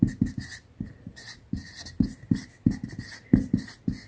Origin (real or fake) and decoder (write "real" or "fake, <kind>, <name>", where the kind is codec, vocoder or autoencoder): real